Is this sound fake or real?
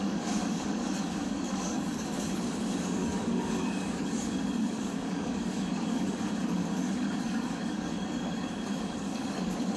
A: fake